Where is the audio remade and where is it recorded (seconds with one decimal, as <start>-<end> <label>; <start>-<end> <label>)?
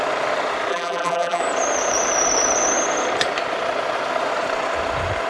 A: 0.0-0.7 recorded; 0.7-1.4 remade; 1.4-5.3 recorded